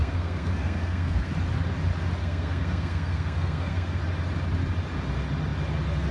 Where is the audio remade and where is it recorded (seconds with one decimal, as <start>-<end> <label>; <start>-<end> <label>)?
0.0-1.3 remade; 1.3-2.2 recorded; 2.2-4.0 remade; 4.0-6.1 recorded